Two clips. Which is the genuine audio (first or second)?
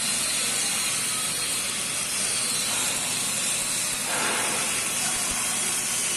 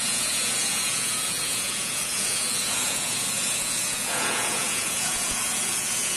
first